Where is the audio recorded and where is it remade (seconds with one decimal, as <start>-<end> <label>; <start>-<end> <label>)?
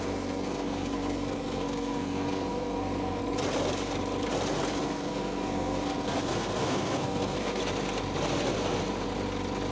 0.0-3.2 remade; 3.2-4.8 recorded; 4.8-7.6 remade; 7.6-9.7 recorded